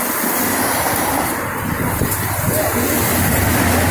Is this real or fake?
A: real